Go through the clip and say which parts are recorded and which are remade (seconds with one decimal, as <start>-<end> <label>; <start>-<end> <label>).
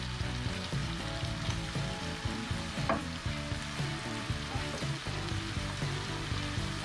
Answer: 0.0-0.8 recorded; 0.8-3.0 remade; 3.0-3.9 recorded; 3.9-5.8 remade; 5.8-6.8 recorded